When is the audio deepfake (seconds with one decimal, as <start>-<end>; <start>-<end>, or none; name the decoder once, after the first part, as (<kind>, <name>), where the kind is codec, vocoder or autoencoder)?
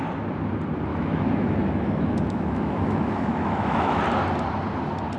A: 0.9-4.0 (autoencoder, DAC-VAE)